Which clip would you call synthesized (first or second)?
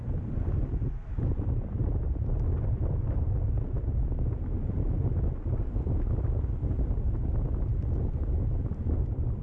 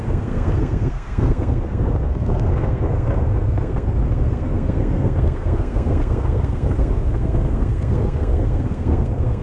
second